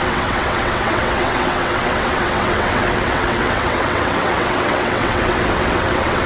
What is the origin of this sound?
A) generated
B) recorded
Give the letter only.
A